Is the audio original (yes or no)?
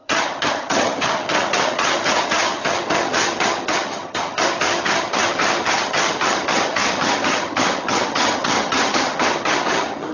no